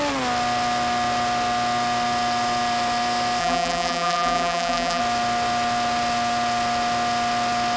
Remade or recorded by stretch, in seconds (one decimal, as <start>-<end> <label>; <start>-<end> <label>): 0.0-3.4 recorded; 3.4-5.0 remade; 5.0-7.8 recorded